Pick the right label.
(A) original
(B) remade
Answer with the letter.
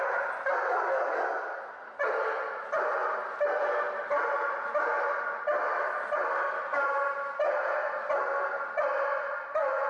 A